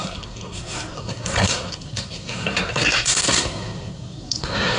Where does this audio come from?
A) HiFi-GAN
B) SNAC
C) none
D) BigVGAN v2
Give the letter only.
B